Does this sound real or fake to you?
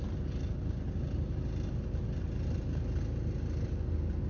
real